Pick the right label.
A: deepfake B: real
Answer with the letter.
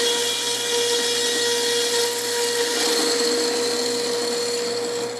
B